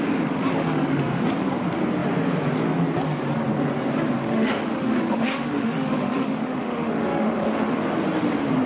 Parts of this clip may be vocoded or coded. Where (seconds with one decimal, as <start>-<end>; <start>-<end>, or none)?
0.6-1.2; 4.2-7.7